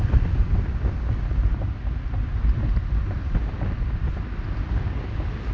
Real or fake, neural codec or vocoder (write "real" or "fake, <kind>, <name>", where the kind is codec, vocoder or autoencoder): real